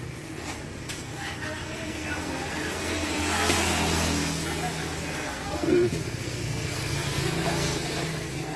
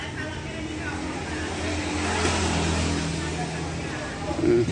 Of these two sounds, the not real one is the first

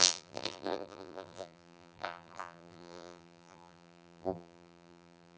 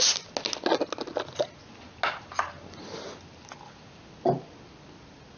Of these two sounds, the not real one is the first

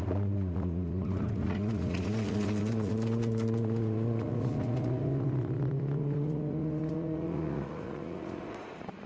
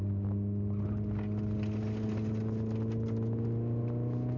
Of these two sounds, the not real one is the first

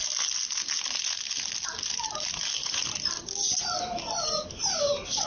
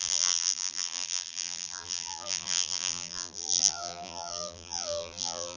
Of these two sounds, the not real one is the second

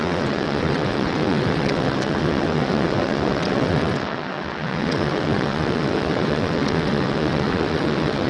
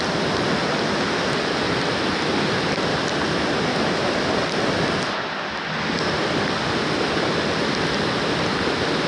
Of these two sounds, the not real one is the first